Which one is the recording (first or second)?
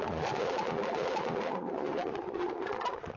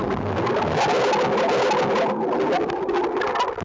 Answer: second